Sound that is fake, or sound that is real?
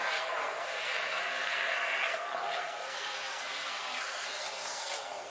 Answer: fake